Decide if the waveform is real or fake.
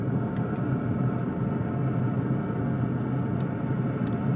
real